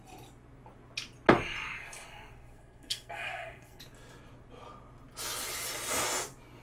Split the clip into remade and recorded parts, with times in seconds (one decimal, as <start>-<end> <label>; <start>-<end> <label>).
0.0-1.8 recorded; 1.8-3.8 remade; 3.8-6.6 recorded